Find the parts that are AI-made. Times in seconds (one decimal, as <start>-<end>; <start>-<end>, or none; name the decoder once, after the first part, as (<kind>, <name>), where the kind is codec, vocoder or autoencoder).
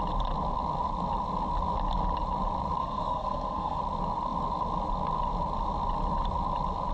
2.8-3.8 (codec, SNAC)